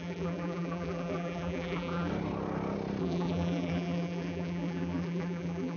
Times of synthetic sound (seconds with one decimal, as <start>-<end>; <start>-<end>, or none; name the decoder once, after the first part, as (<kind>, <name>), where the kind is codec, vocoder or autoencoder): 0.0-2.1 (vocoder, BigVGAN v2); 3.0-5.8